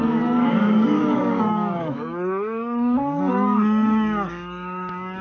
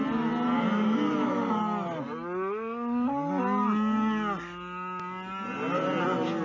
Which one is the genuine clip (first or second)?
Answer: second